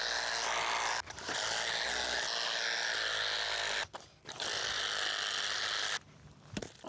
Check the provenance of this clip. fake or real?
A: real